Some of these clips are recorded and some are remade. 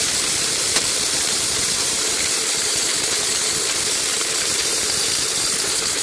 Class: remade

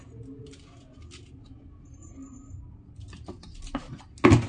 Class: recorded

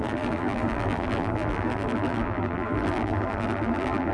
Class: remade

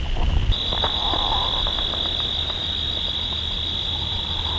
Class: recorded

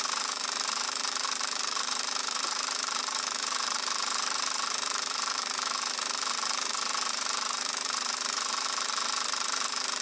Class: remade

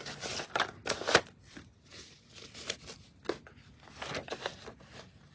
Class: recorded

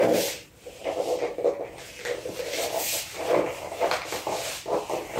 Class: recorded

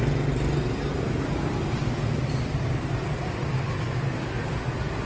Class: recorded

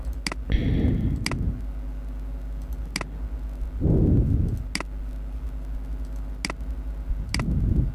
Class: recorded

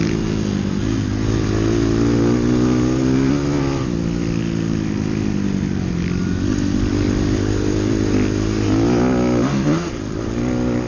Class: recorded